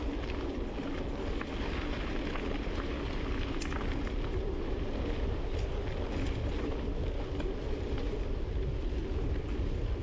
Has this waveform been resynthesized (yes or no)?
no